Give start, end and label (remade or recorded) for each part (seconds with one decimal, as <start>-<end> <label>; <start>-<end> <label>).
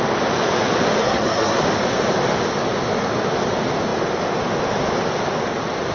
0.0-1.0 recorded; 1.0-1.6 remade; 1.6-5.9 recorded